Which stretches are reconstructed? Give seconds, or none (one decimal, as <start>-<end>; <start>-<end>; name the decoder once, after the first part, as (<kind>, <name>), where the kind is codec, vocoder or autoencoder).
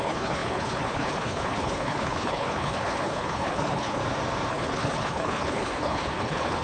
0.0-4.0 (codec, HILCodec); 4.5-6.6